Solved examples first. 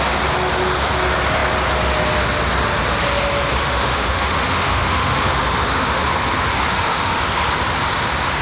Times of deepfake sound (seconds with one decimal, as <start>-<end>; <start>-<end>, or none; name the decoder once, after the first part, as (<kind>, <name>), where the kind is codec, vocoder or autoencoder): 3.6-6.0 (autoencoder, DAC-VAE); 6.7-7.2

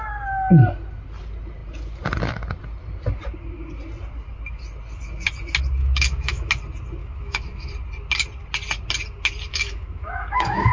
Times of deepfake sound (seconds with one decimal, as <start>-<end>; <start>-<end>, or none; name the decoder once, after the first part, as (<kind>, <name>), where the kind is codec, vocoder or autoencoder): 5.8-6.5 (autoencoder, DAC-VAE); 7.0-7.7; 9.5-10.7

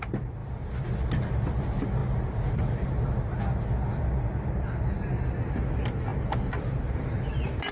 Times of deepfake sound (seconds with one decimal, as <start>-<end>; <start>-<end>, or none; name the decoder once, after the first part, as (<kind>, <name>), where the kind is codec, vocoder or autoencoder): none

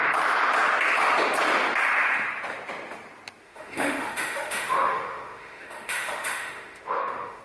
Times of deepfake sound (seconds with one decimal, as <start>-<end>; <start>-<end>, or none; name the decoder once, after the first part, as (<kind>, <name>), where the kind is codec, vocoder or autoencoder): 3.4-7.4 (autoencoder, DAC-VAE)

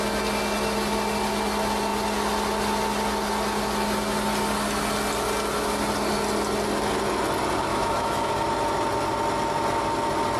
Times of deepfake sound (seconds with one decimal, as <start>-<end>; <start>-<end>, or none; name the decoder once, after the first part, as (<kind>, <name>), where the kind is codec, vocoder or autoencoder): 7.7-8.3 (autoencoder, DAC-VAE)

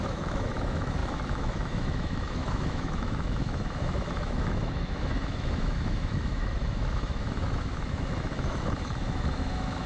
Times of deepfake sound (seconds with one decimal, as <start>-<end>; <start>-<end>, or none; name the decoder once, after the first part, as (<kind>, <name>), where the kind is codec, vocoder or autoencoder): 0.0-9.9 (autoencoder, DAC-VAE)

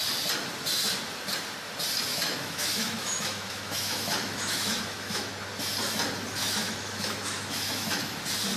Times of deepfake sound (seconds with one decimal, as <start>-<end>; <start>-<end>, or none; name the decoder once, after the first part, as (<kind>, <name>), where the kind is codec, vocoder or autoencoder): 2.1-5.3 (autoencoder, DAC-VAE); 6.4-8.2